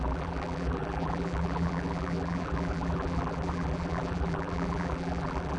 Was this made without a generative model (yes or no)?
no